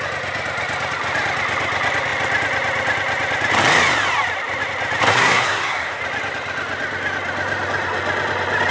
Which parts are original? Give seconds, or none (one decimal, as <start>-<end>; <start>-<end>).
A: 0.0-5.1; 6.0-8.7